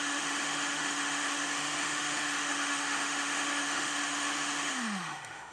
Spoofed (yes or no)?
yes